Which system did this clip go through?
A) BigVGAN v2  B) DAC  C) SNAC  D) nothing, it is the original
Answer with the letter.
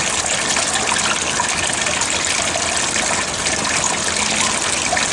D